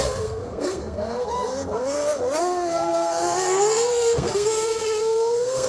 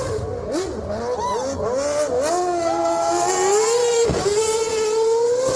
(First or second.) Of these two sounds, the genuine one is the second